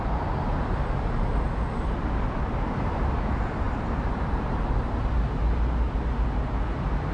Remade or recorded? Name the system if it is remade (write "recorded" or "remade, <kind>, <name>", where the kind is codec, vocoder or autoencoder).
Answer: recorded